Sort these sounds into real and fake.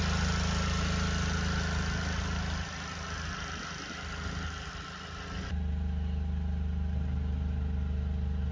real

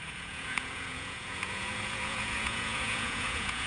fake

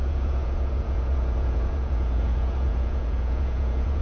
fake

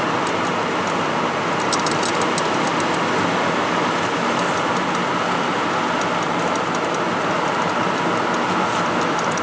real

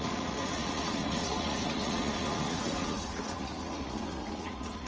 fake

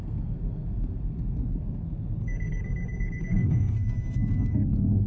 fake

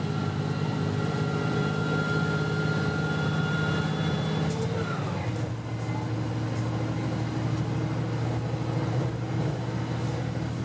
real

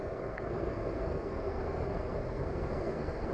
fake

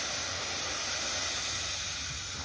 real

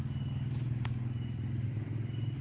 real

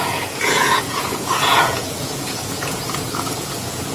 fake